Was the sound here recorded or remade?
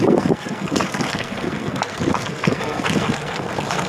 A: remade